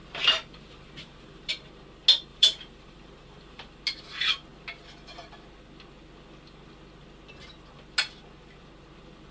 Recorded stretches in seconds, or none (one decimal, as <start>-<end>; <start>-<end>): 1.5-2.3; 3.7-9.3